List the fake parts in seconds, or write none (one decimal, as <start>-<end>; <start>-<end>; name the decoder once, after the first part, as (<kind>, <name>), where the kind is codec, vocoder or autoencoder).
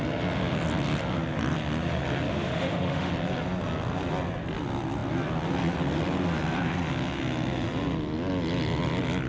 2.3-3.1 (autoencoder, DAC-VAE)